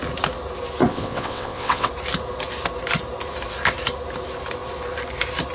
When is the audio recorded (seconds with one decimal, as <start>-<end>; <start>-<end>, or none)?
0.0-0.9; 1.9-5.5